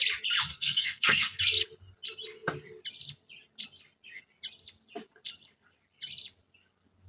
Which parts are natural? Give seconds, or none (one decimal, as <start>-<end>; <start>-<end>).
0.0-0.5; 1.4-7.1